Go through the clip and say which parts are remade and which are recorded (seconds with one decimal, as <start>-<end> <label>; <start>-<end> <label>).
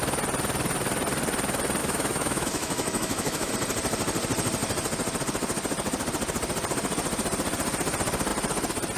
0.0-1.8 recorded; 1.8-3.5 remade; 3.5-9.0 recorded